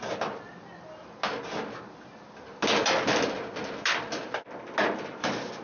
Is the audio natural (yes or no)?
yes